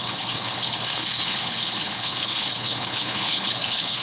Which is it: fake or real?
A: fake